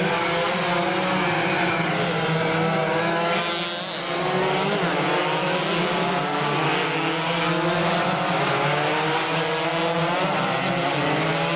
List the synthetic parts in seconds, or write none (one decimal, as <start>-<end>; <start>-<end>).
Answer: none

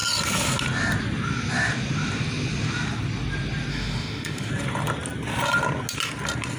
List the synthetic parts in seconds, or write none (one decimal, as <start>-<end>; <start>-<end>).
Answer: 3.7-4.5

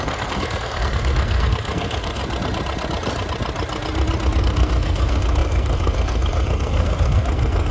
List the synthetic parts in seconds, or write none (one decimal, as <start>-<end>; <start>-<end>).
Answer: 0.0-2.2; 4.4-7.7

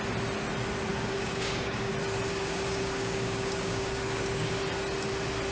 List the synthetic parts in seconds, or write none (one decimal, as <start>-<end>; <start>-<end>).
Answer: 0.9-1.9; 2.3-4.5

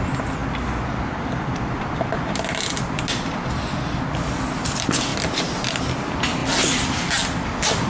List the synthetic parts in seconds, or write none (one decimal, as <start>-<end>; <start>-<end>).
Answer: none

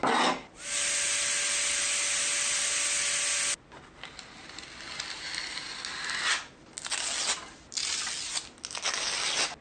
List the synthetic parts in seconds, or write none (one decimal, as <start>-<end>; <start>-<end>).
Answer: none

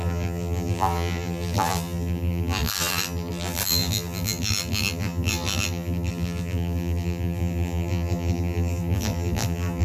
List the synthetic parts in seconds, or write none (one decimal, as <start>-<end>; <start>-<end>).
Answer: 0.0-9.8